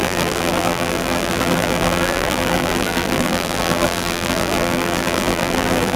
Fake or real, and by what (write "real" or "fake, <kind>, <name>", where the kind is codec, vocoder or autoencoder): fake, vocoder, BigVGAN v2